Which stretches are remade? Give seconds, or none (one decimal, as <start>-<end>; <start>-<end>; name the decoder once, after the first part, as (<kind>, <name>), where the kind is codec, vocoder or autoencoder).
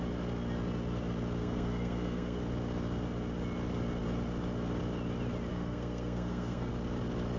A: 1.4-2.4 (codec, SNAC); 5.5-6.7